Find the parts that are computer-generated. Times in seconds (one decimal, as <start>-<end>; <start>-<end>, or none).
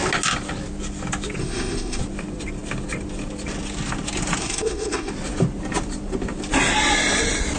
1.4-2.0; 4.4-5.1